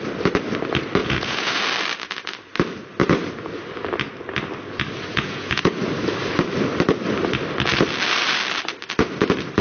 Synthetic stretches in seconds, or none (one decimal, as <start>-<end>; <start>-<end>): 1.0-1.6; 5.1-5.8